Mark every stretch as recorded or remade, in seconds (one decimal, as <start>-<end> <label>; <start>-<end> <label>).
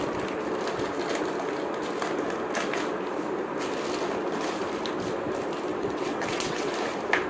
0.0-5.7 recorded; 5.7-6.7 remade; 6.7-7.3 recorded